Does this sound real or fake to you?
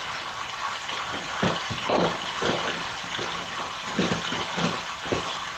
real